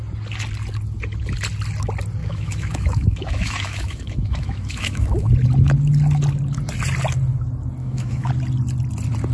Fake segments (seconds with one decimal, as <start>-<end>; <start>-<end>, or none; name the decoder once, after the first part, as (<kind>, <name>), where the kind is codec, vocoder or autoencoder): 2.2-5.3 (autoencoder, DAC-VAE); 7.8-8.3